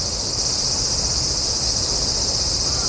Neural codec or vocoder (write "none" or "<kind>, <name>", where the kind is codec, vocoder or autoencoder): none